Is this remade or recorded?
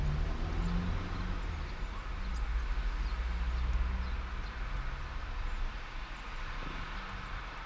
recorded